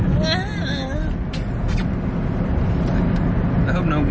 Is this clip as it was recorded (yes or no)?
yes